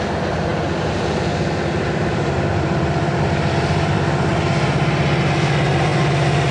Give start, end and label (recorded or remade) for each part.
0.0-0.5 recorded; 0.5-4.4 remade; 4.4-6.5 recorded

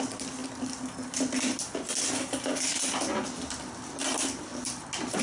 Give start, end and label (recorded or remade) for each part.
0.0-0.4 remade; 0.4-3.5 recorded; 3.5-4.5 remade; 4.5-5.2 recorded

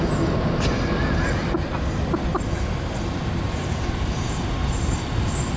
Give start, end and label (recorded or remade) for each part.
0.0-3.6 recorded; 3.6-5.6 remade

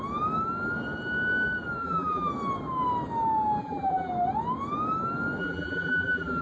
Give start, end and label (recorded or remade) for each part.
0.0-1.8 recorded; 1.8-2.3 remade; 2.3-3.6 recorded; 3.6-4.1 remade; 4.1-5.4 recorded; 5.4-6.4 remade

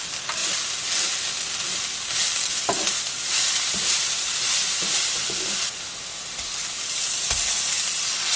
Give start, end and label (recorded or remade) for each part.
0.0-2.5 recorded; 2.5-7.3 remade; 7.3-8.4 recorded

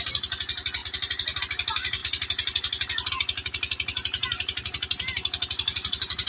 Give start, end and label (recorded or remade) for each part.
0.0-0.8 recorded; 0.8-1.4 remade; 1.4-2.0 recorded; 2.0-3.1 remade; 3.1-6.3 recorded

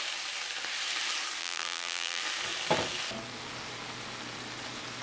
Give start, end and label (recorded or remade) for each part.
0.0-1.4 recorded; 1.4-2.2 remade; 2.2-5.0 recorded

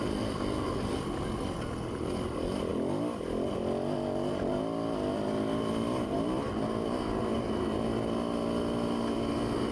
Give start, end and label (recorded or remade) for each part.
0.0-9.7 recorded